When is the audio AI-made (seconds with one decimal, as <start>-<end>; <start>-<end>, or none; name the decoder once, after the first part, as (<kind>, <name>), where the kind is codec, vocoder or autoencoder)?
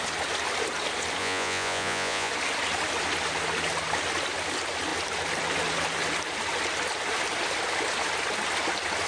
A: 1.2-2.3 (vocoder, Vocos)